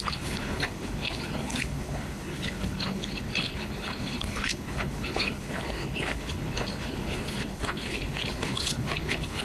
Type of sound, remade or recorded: remade